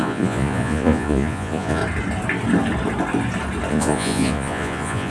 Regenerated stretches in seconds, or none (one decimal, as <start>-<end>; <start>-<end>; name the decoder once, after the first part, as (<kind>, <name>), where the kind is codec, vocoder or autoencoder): 0.0-1.8 (vocoder, Vocos); 3.7-5.1